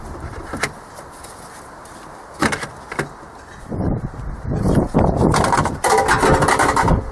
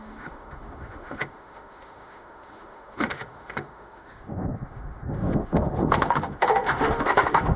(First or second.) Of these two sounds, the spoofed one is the second